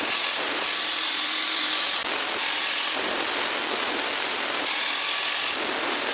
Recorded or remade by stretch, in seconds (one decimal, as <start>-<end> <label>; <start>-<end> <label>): 0.0-6.1 recorded